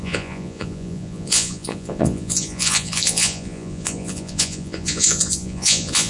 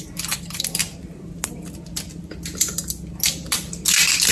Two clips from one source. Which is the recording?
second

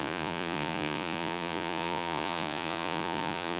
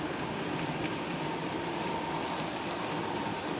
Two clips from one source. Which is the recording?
second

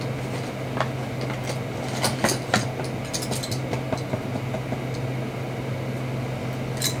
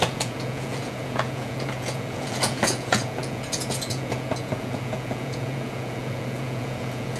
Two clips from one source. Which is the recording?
first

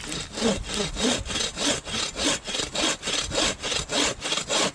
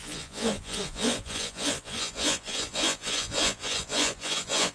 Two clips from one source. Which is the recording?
first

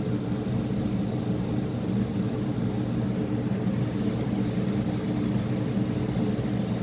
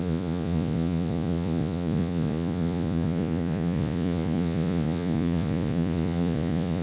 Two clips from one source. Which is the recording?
first